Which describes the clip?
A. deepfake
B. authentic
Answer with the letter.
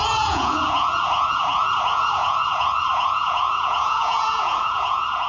A